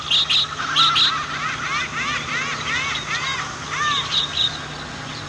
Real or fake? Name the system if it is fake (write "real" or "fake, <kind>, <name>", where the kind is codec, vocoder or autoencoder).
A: real